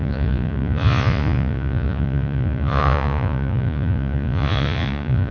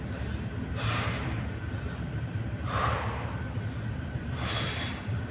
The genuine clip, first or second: second